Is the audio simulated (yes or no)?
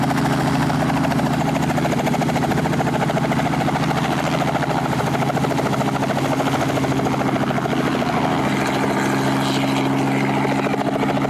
no